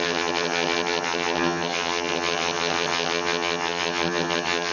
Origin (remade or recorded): remade